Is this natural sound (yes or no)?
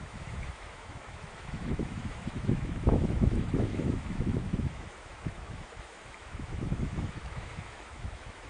no